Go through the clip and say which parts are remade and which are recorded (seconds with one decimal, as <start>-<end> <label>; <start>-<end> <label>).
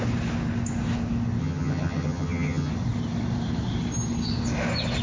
0.0-1.4 recorded; 1.4-2.7 remade; 2.7-5.0 recorded